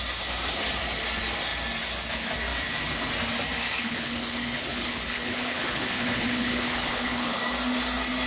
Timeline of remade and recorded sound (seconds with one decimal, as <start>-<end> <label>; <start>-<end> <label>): 0.0-3.8 recorded; 3.8-7.4 remade; 7.4-8.3 recorded

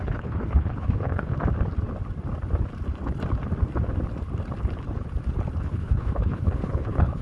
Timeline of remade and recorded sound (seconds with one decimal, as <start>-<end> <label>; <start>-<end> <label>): 0.0-1.3 remade; 1.3-5.6 recorded; 5.6-7.2 remade

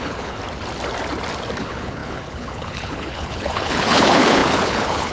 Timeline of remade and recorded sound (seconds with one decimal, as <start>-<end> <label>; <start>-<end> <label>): 0.0-0.4 remade; 0.4-1.6 recorded; 1.6-5.1 remade

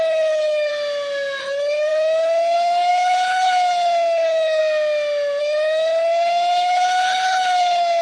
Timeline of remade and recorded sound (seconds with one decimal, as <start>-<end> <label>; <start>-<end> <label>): 0.0-0.7 remade; 0.7-1.4 recorded; 1.4-4.6 remade; 4.6-5.4 recorded; 5.4-8.0 remade

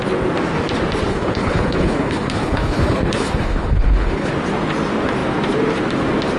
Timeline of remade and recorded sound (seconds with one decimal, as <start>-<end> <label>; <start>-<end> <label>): 0.0-1.1 recorded; 1.1-4.3 remade; 4.3-6.4 recorded